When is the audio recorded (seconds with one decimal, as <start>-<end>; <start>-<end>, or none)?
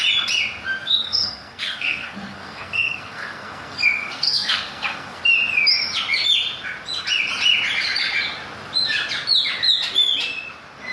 0.0-0.8; 5.2-10.9